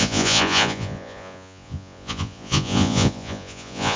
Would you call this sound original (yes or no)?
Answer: no